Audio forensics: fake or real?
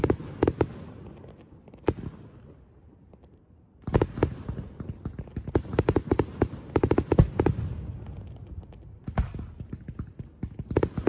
real